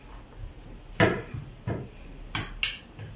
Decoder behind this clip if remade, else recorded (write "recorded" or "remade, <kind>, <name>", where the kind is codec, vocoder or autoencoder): recorded